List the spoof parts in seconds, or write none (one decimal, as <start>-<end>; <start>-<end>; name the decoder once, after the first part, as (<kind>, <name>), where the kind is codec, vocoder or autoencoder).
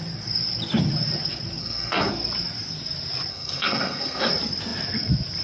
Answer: 1.6-2.1 (codec, SNAC); 3.3-4.3